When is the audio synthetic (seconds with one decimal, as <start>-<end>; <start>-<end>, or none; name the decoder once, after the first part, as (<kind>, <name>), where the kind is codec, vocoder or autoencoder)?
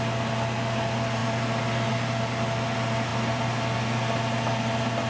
none